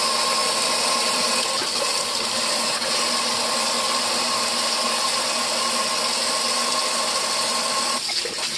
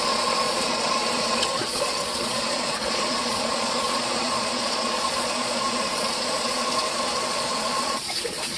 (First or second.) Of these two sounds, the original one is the first